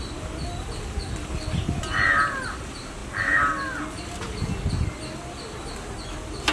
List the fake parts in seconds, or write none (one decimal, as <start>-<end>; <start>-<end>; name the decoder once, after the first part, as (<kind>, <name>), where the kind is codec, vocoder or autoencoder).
none